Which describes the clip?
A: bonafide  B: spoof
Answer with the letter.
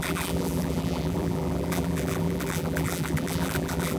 B